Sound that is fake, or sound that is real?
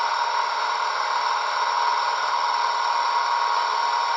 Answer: real